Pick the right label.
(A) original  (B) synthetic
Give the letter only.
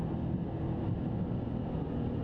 A